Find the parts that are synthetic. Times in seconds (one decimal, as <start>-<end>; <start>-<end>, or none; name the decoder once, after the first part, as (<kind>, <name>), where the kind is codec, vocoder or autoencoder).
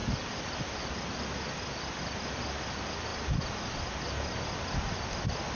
none